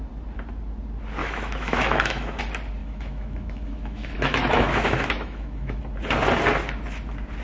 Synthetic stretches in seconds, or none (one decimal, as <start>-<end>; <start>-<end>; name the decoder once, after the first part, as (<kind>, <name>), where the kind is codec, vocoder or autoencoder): 1.2-2.4 (autoencoder, DAC-VAE); 2.8-5.8

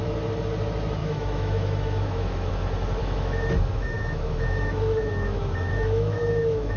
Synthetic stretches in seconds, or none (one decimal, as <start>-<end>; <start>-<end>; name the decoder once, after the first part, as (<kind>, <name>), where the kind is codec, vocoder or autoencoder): 1.0-2.5 (autoencoder, DAC-VAE); 3.0-6.8

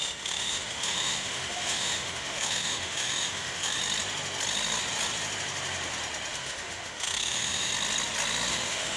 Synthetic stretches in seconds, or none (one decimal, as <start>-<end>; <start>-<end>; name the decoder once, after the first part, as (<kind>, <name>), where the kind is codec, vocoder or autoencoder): 0.0-3.8 (autoencoder, DAC-VAE); 6.3-7.7; 8.5-9.0

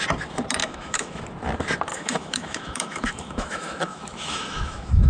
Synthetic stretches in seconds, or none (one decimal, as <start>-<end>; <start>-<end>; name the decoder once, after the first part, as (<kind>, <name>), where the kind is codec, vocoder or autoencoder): 0.6-1.2 (autoencoder, DAC-VAE); 1.9-5.1

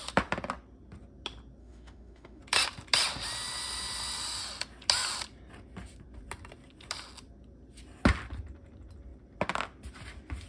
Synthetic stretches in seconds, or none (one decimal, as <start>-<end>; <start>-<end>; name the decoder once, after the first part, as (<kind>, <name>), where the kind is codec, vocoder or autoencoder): 1.6-2.4 (autoencoder, DAC-VAE)

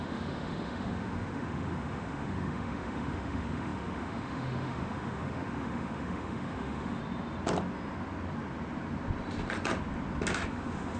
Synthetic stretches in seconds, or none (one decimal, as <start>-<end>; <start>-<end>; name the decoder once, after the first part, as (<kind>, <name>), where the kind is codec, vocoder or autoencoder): 0.0-7.0 (autoencoder, DAC-VAE); 10.5-11.0

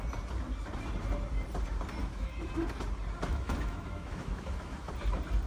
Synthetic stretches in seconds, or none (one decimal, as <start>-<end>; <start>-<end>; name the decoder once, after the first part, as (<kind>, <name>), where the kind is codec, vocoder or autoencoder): 2.0-2.5 (autoencoder, DAC-VAE); 3.3-4.9